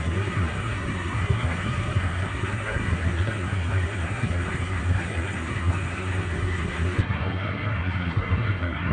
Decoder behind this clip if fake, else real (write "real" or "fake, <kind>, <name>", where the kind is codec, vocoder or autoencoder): fake, codec, SNAC